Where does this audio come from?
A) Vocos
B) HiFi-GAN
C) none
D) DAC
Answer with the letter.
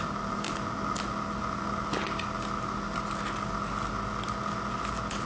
C